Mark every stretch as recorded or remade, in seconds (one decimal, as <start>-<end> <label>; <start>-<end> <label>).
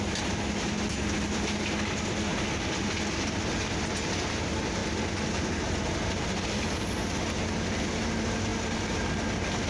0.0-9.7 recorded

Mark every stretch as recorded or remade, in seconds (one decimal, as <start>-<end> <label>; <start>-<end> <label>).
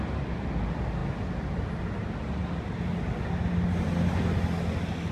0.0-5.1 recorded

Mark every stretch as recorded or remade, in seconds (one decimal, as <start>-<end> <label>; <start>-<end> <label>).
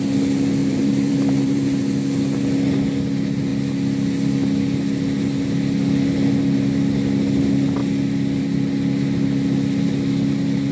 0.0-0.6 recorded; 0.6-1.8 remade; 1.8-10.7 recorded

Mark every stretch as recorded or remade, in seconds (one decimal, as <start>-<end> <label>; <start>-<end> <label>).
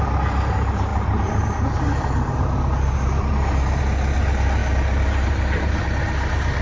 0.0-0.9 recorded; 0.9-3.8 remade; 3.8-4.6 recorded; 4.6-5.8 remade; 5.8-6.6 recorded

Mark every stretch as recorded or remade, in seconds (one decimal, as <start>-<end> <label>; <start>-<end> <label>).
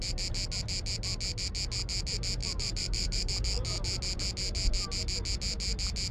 0.0-2.4 recorded; 2.4-3.3 remade; 3.3-6.1 recorded